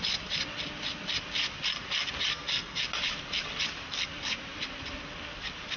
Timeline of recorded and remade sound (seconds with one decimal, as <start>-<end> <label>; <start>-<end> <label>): 0.0-2.3 recorded; 2.3-2.8 remade; 2.8-5.8 recorded